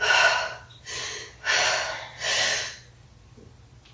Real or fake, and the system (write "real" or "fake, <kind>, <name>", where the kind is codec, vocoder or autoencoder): real